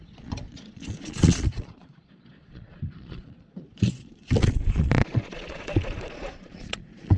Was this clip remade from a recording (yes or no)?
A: yes